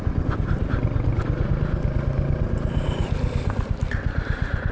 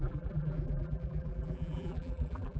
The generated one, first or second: second